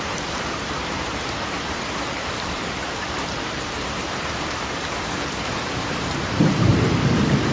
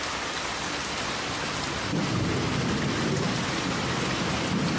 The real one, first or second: second